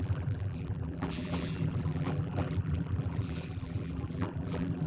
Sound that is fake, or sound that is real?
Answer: fake